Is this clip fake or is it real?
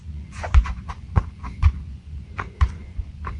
fake